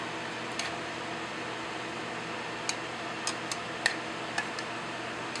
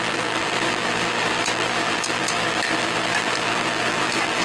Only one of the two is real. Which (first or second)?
first